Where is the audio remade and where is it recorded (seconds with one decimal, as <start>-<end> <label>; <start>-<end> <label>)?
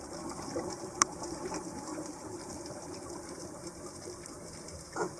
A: 0.0-5.2 recorded